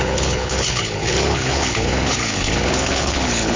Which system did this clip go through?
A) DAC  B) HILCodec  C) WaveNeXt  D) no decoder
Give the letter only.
B